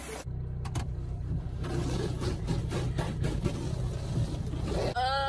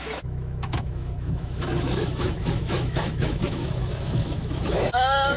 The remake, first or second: second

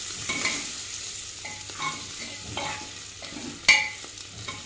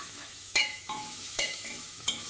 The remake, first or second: second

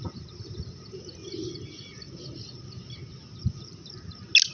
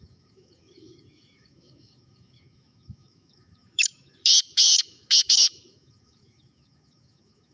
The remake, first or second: second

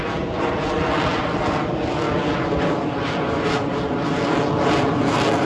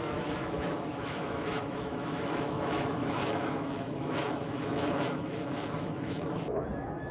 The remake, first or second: second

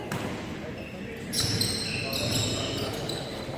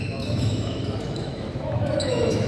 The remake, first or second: second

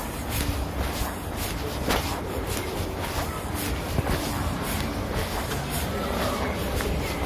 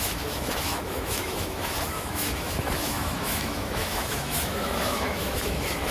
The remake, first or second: second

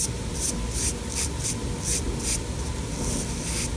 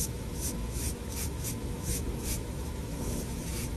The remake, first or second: second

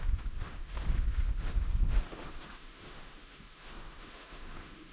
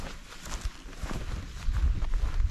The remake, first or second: first